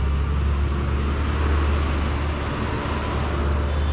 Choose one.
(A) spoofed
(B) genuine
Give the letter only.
B